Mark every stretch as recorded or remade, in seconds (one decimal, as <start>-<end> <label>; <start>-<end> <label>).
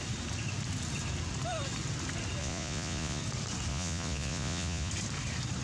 0.0-2.4 recorded; 2.4-3.2 remade; 3.2-3.7 recorded; 3.7-4.9 remade; 4.9-5.6 recorded